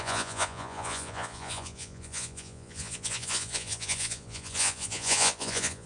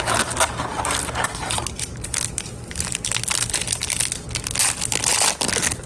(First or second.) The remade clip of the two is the first